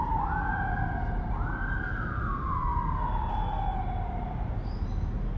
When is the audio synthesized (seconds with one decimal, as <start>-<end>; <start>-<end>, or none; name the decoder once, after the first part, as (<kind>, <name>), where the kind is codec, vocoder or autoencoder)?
none